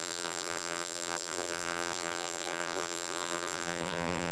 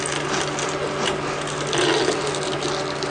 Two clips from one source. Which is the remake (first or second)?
first